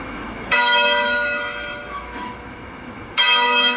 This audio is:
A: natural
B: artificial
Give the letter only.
B